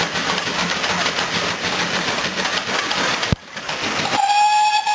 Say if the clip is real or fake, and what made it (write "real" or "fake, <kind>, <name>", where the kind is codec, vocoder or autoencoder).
real